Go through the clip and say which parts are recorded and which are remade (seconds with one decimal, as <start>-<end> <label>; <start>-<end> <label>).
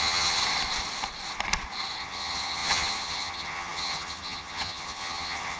0.0-0.4 remade; 0.4-2.0 recorded; 2.0-5.6 remade